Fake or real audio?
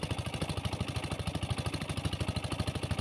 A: real